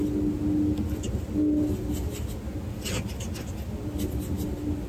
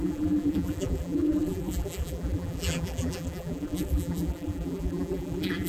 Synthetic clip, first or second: second